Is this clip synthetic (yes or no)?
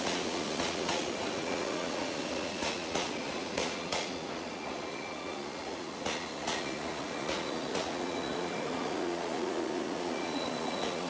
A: yes